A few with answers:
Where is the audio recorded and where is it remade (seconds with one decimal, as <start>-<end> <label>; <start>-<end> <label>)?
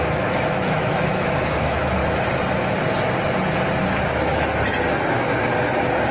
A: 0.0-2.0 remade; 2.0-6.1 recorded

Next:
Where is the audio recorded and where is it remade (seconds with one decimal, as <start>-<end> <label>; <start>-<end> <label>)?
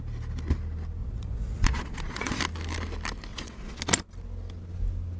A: 0.0-1.0 recorded; 1.0-2.4 remade; 2.4-3.3 recorded; 3.3-3.8 remade; 3.8-5.2 recorded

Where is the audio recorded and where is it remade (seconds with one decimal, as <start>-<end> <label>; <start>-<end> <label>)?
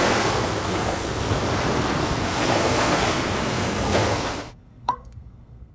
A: 0.0-1.4 remade; 1.4-2.0 recorded; 2.0-5.7 remade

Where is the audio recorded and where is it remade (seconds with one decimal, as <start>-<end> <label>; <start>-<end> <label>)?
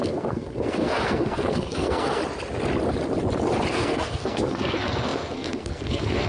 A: 0.0-2.2 remade; 2.2-3.7 recorded; 3.7-6.3 remade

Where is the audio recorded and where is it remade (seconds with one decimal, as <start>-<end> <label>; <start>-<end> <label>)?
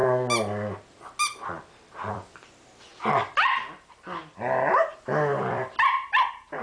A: 0.0-2.1 recorded; 2.1-2.9 remade; 2.9-3.5 recorded; 3.5-4.2 remade; 4.2-4.9 recorded; 4.9-6.6 remade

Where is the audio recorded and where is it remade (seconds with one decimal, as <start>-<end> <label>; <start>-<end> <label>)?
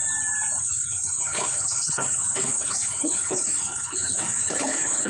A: 0.0-0.6 recorded; 0.6-5.1 remade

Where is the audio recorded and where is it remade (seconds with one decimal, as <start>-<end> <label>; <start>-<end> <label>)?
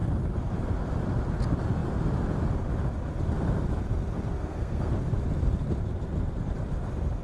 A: 0.0-4.3 recorded; 4.3-4.9 remade; 4.9-7.2 recorded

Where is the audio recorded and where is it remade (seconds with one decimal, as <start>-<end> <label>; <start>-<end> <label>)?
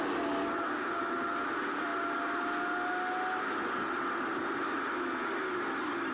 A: 0.0-6.1 recorded